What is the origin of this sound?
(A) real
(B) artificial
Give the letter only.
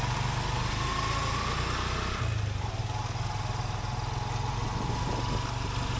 A